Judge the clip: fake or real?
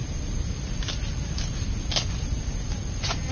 real